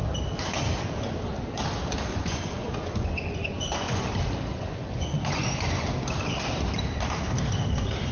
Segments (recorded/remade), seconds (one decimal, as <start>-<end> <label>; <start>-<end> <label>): 0.0-2.1 recorded; 2.1-4.0 remade; 4.0-4.5 recorded; 4.5-5.9 remade; 5.9-8.1 recorded